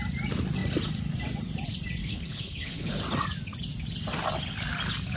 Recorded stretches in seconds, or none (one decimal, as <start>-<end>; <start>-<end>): 0.0-2.0; 2.9-5.2